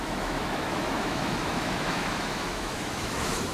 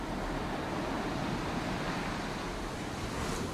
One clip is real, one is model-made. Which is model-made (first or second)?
first